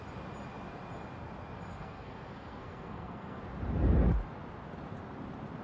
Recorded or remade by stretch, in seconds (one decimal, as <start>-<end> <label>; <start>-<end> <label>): 0.0-1.7 recorded; 1.7-3.4 remade; 3.4-5.6 recorded